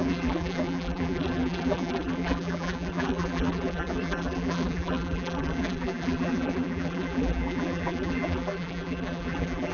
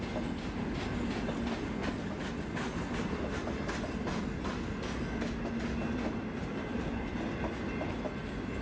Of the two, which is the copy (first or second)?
first